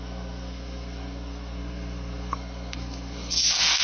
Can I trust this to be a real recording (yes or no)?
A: no